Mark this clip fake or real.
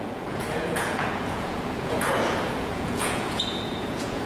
fake